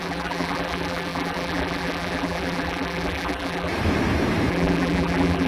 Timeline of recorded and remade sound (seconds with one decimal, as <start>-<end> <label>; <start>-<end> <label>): 0.0-3.7 remade; 3.7-4.5 recorded; 4.5-5.5 remade